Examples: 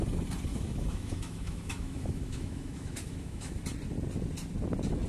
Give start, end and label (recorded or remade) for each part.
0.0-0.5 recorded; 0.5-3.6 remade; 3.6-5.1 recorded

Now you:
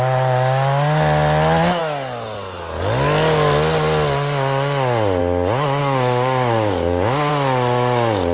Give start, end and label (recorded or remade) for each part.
0.0-5.8 recorded; 5.8-7.3 remade; 7.3-8.3 recorded

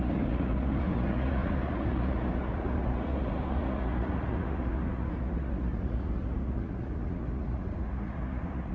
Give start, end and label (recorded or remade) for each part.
0.0-8.7 remade

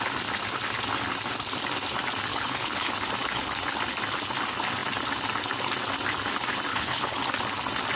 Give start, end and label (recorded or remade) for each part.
0.0-2.3 recorded; 2.3-2.9 remade; 2.9-6.7 recorded; 6.7-7.2 remade; 7.2-8.0 recorded

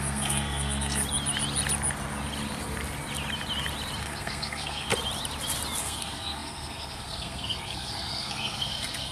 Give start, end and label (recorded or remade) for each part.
0.0-1.0 remade; 1.0-4.0 recorded; 4.0-4.9 remade; 4.9-5.8 recorded; 5.8-9.1 remade

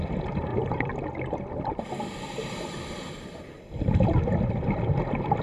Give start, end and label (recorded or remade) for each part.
0.0-0.5 recorded; 0.5-3.7 remade; 3.7-5.4 recorded